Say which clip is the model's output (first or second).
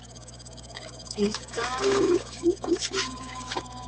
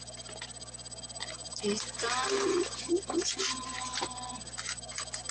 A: first